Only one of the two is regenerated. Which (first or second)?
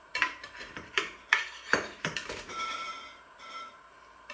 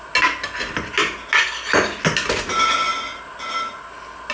first